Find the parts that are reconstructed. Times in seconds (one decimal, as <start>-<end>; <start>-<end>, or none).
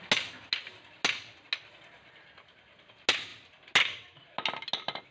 none